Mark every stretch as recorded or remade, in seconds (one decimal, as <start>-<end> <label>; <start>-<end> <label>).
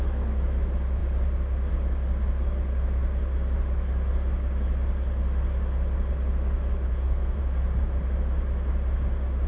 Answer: 0.0-6.9 recorded; 6.9-7.4 remade; 7.4-9.5 recorded